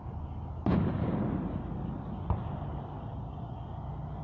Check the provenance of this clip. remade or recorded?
recorded